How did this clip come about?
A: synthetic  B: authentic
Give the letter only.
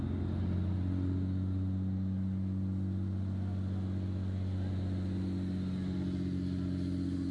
B